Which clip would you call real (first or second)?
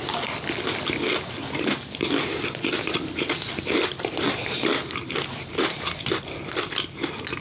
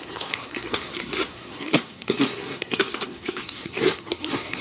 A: first